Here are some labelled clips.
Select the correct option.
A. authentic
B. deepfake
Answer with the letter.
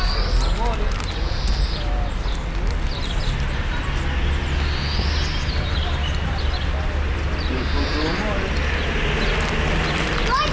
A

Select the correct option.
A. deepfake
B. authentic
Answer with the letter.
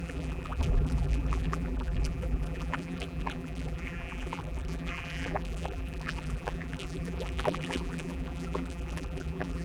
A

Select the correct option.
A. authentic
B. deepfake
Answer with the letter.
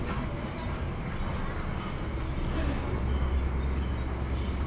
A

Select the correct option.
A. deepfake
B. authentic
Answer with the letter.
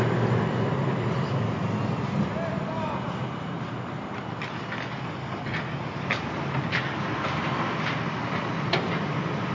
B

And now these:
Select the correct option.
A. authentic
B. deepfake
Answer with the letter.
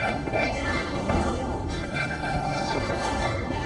B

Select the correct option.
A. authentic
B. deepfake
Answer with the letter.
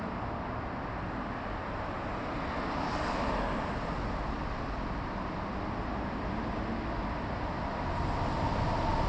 A